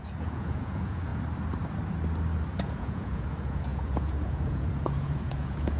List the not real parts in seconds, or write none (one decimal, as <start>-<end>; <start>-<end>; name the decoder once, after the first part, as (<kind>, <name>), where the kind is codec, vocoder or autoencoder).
0.0-1.1 (vocoder, Vocos); 2.6-5.8